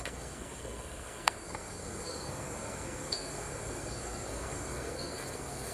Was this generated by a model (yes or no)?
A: yes